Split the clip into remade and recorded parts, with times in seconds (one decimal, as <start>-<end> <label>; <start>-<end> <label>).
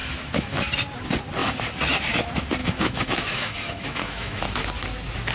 0.0-0.6 remade; 0.6-2.6 recorded; 2.6-4.4 remade; 4.4-5.3 recorded